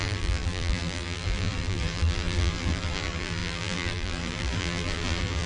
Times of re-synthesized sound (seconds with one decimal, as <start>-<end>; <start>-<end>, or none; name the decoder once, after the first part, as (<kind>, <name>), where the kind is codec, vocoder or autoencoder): 0.0-5.5 (vocoder, BigVGAN v2)

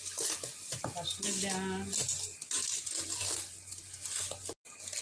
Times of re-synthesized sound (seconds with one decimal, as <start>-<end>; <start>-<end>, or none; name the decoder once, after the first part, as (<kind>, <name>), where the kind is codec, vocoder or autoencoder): none

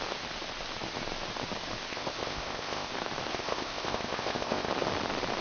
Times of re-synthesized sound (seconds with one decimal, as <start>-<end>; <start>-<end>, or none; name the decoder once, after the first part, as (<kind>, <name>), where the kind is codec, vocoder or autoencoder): 1.9-2.9 (codec, ZipCodec); 3.3-4.7

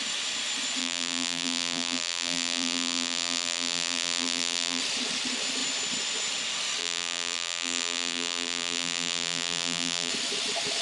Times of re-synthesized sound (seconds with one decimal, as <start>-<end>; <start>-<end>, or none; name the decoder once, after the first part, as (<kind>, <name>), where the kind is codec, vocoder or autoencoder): 0.8-4.8 (vocoder, BigVGAN v2); 6.8-10.1

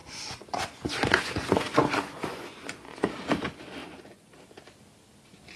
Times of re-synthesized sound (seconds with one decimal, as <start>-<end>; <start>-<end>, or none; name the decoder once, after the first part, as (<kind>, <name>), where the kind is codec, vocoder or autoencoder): 0.0-3.1 (vocoder, Vocos); 3.8-4.3

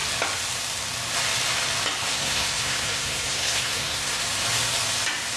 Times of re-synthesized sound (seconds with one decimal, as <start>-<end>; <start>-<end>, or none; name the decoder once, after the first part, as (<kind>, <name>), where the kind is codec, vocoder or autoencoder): 2.1-4.2 (codec, SNAC)

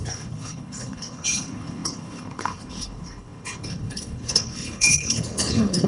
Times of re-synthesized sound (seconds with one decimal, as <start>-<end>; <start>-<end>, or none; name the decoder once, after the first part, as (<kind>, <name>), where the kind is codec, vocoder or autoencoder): 0.0-5.9 (codec, HILCodec)

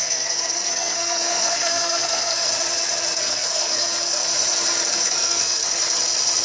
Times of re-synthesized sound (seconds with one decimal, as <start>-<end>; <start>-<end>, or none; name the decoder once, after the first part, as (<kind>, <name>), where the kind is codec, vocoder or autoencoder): 0.0-2.5 (codec, SNAC); 3.2-4.2; 4.9-5.6